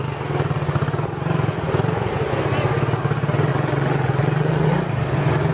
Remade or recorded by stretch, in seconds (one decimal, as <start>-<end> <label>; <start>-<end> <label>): 0.0-3.5 recorded; 3.5-4.7 remade; 4.7-5.5 recorded